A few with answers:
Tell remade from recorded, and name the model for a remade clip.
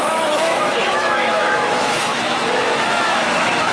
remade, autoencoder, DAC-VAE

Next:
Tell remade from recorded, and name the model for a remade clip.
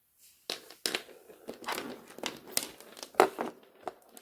recorded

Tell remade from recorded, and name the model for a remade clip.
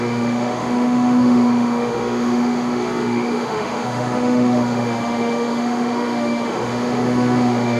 remade, autoencoder, DAC-VAE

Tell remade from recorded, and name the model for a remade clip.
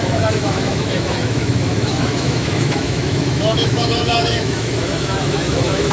remade, autoencoder, DAC-VAE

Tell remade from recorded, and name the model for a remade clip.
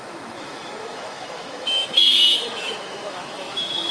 remade, autoencoder, DAC-VAE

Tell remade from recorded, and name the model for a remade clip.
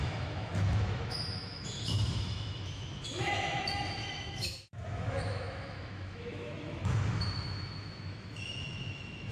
remade, autoencoder, DAC-VAE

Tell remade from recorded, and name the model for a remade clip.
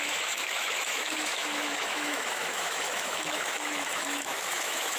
remade, autoencoder, DAC-VAE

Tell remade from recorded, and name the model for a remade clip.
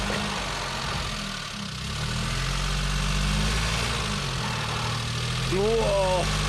recorded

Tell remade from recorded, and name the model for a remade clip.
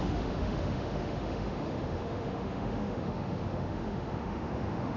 remade, autoencoder, DAC-VAE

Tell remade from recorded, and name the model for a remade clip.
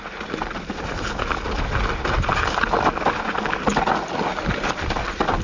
recorded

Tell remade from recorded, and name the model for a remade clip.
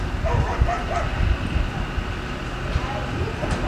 recorded